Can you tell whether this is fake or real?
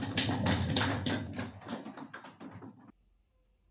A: real